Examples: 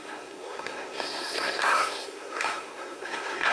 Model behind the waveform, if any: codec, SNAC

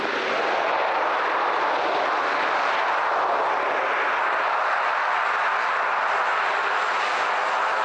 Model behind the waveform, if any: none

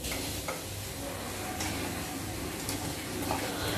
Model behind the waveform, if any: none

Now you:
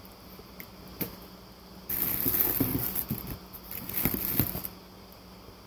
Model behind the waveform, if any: none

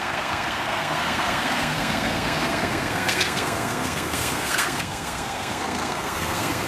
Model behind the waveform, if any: codec, SNAC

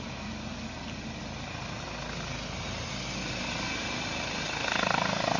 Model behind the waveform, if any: none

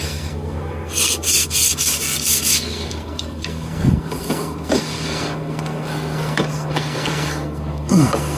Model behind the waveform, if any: codec, SNAC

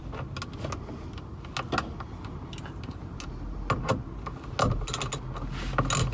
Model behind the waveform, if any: none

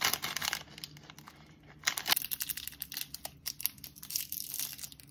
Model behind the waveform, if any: none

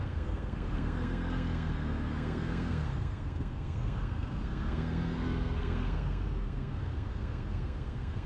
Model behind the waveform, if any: codec, SNAC